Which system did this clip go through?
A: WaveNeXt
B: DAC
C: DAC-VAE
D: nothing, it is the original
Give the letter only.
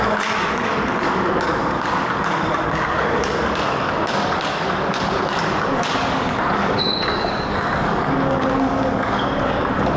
B